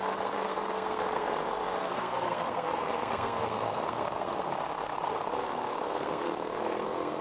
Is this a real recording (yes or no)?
no